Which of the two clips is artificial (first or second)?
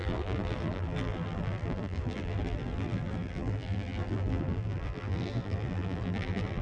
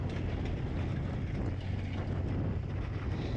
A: first